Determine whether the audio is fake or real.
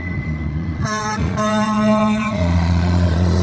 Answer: fake